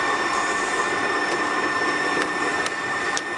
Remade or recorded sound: remade